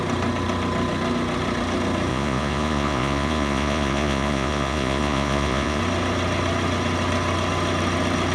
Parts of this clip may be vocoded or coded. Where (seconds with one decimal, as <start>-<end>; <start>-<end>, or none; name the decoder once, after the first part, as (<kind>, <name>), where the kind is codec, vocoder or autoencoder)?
2.1-5.8 (vocoder, Vocos)